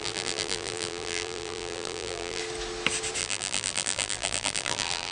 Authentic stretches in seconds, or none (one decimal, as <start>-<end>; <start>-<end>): 2.4-3.2